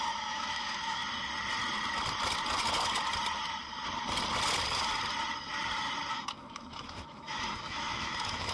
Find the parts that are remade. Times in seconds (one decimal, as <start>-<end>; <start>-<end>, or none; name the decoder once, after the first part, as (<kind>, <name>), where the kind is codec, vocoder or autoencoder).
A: 0.0-1.0 (autoencoder, DAC-VAE); 6.1-8.5